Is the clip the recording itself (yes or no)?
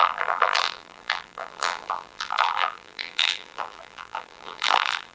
no